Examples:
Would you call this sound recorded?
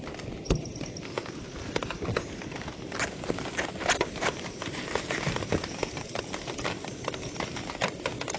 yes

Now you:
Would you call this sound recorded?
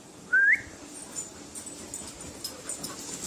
yes